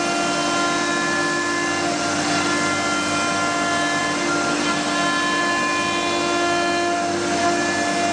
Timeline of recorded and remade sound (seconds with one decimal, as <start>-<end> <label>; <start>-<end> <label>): 0.0-8.1 recorded